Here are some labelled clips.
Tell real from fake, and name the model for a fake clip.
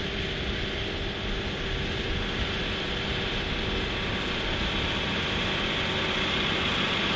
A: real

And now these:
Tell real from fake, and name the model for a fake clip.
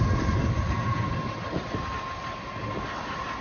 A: real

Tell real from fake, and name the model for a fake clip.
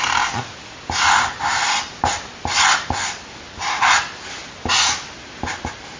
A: real